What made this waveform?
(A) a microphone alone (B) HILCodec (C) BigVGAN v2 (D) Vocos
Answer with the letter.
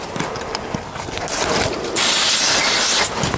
A